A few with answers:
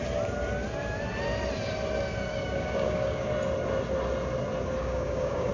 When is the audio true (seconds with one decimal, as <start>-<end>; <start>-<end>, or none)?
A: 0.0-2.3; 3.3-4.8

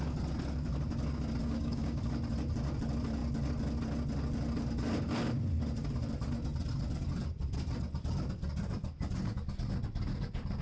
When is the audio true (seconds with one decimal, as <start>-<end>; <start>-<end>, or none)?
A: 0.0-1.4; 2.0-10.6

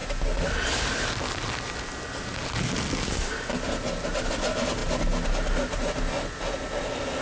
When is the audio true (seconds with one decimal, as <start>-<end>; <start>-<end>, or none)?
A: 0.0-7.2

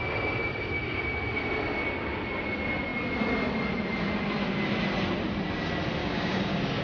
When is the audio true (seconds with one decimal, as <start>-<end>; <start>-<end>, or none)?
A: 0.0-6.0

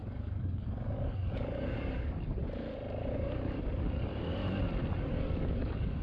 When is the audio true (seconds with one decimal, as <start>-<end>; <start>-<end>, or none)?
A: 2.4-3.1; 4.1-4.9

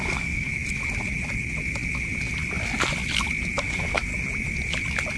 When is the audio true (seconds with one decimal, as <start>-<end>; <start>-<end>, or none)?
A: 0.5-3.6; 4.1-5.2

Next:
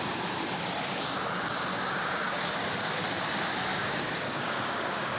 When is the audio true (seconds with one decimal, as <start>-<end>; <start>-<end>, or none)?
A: 0.0-1.7; 2.4-3.7

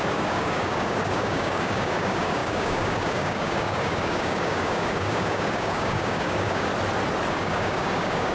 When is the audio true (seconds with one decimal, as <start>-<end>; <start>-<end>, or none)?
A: 6.7-7.3